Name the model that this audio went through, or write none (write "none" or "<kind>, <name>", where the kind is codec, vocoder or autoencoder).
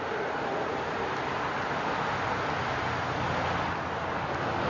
none